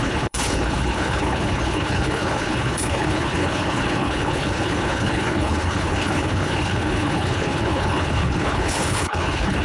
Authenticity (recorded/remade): remade